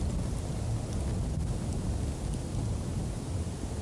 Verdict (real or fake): real